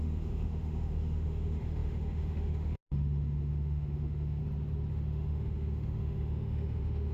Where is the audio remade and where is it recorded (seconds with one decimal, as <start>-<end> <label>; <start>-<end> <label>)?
0.0-4.4 remade; 4.4-4.9 recorded; 4.9-7.1 remade